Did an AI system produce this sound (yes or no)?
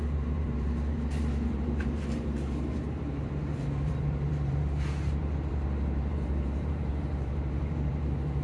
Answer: yes